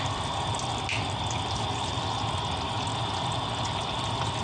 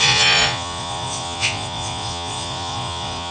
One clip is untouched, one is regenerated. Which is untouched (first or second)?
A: first